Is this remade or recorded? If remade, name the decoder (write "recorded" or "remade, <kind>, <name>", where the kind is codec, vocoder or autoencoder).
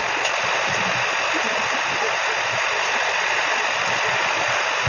recorded